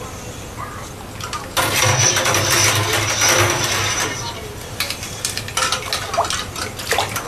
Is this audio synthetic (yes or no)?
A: no